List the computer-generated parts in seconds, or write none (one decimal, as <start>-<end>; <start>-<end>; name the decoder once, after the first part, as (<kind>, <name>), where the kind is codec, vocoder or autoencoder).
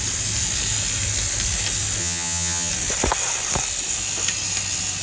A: 2.0-2.7 (vocoder, HiFi-GAN)